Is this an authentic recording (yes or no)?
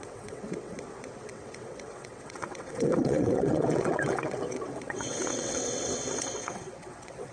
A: no